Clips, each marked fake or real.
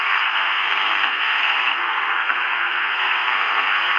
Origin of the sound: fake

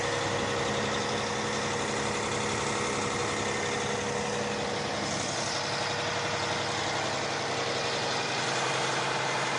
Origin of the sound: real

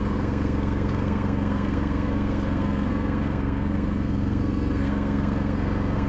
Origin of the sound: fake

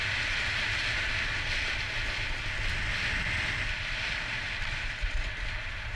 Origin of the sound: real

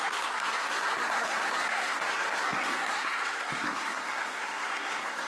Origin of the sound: fake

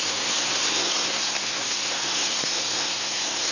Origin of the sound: fake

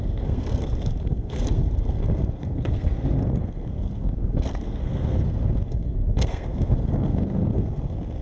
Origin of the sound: fake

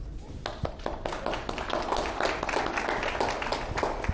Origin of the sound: real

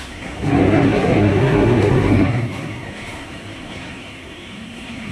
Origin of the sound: fake